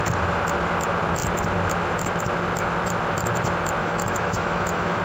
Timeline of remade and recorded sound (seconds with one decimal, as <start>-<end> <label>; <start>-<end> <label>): 0.0-3.8 recorded; 3.8-5.0 remade